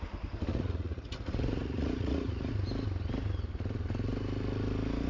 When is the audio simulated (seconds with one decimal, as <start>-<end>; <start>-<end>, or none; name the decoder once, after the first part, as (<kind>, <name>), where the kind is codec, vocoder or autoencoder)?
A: 0.5-2.5 (vocoder, Vocos)